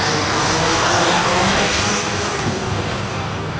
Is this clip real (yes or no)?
no